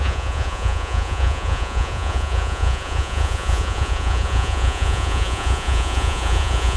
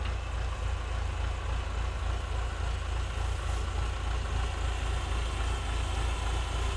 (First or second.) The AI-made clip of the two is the first